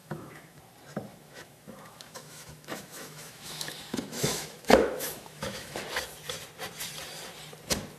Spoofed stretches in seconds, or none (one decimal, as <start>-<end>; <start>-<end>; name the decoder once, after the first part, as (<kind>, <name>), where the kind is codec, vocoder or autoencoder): 0.0-0.6 (autoencoder, DAC-VAE); 1.1-5.8